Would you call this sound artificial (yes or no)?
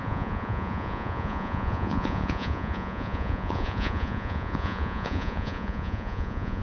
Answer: yes